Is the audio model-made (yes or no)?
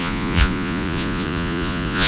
yes